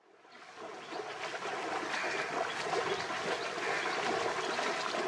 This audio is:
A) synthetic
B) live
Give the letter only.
B